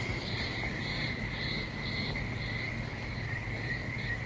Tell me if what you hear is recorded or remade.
recorded